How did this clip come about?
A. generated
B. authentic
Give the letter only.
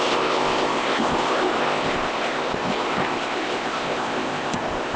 A